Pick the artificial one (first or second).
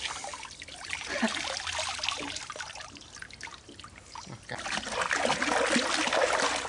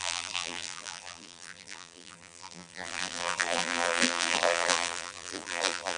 second